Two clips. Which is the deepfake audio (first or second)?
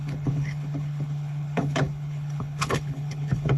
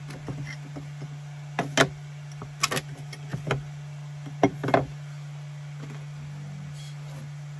first